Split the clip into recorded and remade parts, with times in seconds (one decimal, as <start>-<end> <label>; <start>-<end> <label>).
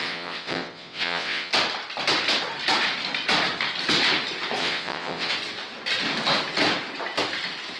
0.0-1.5 remade; 1.5-4.6 recorded; 4.6-5.3 remade; 5.3-7.8 recorded